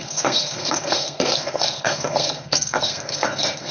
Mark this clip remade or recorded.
remade